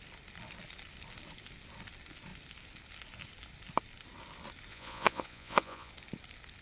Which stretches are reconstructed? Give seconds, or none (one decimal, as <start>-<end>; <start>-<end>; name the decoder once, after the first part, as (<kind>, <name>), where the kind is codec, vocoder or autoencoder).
4.7-5.9 (vocoder, Vocos)